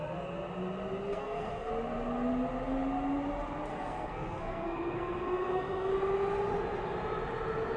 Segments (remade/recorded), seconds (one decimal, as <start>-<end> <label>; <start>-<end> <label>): 0.0-1.1 recorded; 1.1-1.7 remade; 1.7-3.7 recorded; 3.7-5.9 remade; 5.9-7.8 recorded